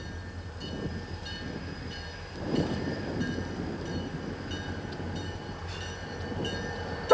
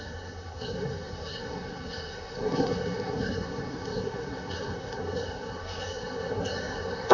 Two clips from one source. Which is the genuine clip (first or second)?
first